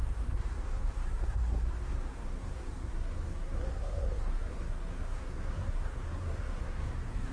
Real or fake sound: fake